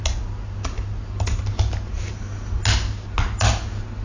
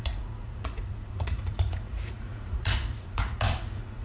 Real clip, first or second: first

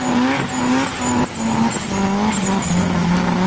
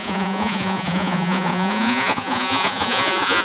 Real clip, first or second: first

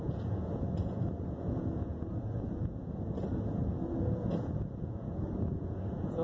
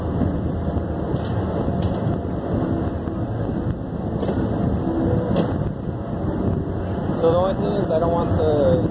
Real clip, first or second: second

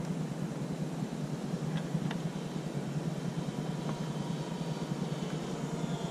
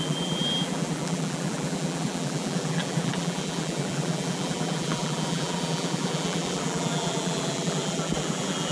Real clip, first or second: first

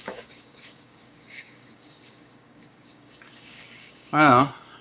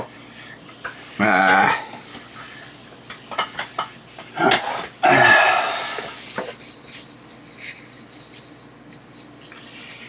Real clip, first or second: second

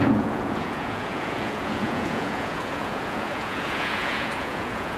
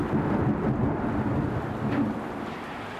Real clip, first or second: second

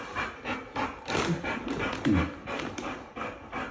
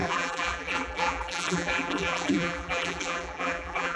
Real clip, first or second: first